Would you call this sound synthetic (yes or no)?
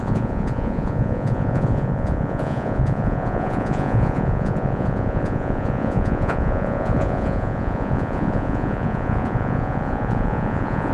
yes